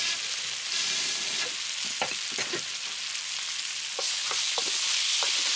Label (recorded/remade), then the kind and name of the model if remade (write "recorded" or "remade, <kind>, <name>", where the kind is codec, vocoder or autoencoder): recorded